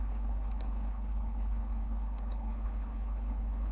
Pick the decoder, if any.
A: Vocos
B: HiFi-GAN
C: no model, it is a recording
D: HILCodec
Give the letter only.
D